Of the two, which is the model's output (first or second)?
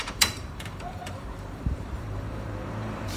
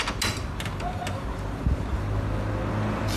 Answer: first